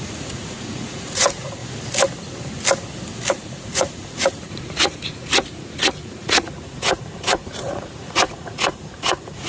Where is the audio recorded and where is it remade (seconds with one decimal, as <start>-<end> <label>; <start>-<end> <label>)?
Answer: 0.0-1.6 remade; 1.6-3.3 recorded; 3.3-9.5 remade